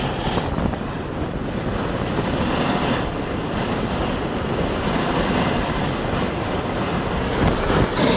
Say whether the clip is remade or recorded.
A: recorded